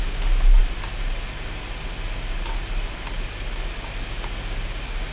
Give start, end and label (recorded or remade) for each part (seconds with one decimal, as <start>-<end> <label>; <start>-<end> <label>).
0.0-5.1 recorded